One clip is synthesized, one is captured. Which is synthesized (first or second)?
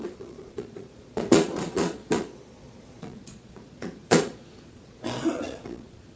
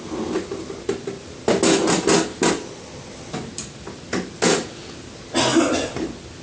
first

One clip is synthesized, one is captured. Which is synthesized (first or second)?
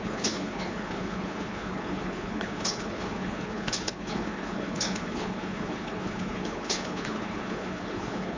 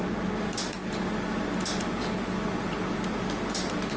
first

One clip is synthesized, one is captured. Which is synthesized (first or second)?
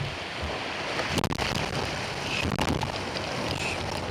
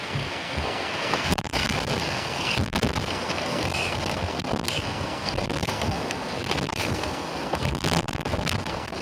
second